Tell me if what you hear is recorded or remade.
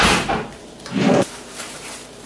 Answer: remade